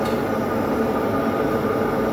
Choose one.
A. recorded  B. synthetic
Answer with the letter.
A